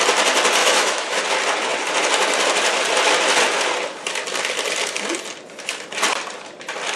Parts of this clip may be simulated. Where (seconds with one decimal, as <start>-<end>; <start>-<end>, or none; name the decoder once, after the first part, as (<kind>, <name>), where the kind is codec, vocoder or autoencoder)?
0.6-1.2 (autoencoder, DAC-VAE)